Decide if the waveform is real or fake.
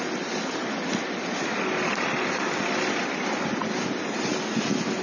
real